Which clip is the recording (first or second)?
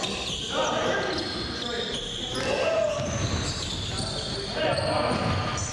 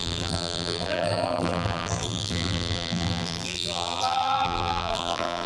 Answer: first